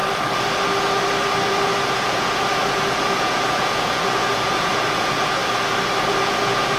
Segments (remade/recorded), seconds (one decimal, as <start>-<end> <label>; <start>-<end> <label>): 0.0-1.8 recorded; 1.8-5.4 remade; 5.4-6.1 recorded; 6.1-6.8 remade